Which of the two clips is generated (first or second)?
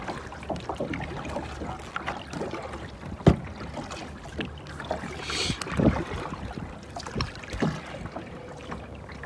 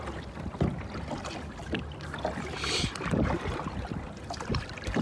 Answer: second